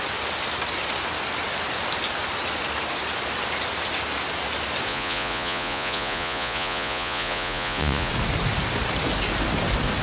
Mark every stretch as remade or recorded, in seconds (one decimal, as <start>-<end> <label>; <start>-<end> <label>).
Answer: 0.0-4.9 recorded; 4.9-8.1 remade; 8.1-10.0 recorded